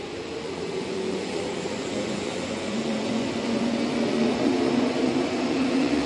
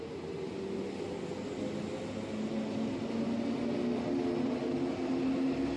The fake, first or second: first